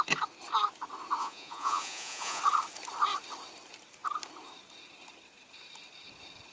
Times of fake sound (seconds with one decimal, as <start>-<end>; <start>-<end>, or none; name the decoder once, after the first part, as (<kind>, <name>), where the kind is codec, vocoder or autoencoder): 1.2-2.4 (vocoder, Vocos)